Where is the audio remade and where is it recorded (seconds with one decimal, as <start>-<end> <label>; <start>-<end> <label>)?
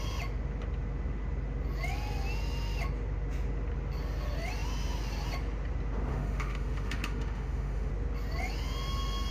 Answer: 0.0-6.1 recorded; 6.1-7.9 remade; 7.9-9.3 recorded